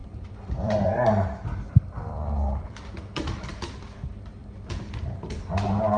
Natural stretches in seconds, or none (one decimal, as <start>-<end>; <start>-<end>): 3.0-4.4; 5.5-6.0